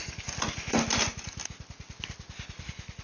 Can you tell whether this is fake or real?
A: real